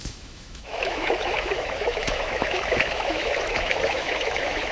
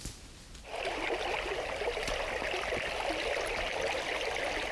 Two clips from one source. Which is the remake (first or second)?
first